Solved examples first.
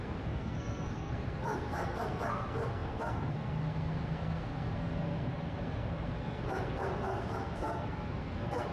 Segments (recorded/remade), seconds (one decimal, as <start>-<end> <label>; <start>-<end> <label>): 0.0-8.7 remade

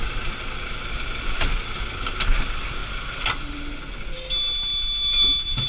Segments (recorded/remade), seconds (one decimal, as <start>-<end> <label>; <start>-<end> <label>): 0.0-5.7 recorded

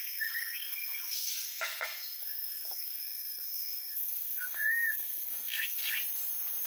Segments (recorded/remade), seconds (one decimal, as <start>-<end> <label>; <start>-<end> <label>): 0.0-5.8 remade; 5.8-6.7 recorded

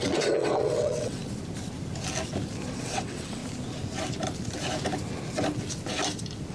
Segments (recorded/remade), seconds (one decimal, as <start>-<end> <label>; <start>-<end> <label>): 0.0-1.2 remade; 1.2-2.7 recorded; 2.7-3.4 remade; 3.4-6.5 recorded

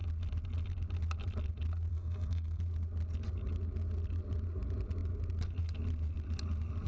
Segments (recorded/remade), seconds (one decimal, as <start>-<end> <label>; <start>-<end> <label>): 0.0-1.9 recorded; 1.9-2.6 remade; 2.6-6.9 recorded

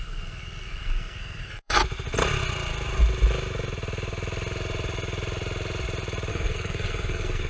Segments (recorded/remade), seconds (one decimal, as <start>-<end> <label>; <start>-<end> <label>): 0.0-1.8 remade; 1.8-6.3 recorded; 6.3-7.5 remade

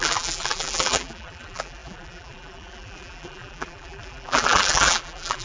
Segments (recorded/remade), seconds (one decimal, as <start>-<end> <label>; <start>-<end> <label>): 0.0-5.4 remade

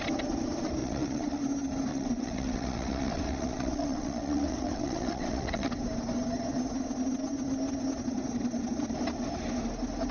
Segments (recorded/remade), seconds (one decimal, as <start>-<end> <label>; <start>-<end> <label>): 0.0-0.8 recorded; 0.8-1.4 remade; 1.4-1.9 recorded; 1.9-5.7 remade; 5.7-10.1 recorded